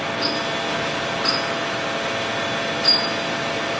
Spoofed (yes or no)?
no